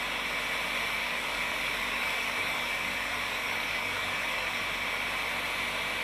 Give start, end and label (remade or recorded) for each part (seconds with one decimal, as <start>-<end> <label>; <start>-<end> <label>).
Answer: 0.0-1.0 recorded; 1.0-4.6 remade; 4.6-6.0 recorded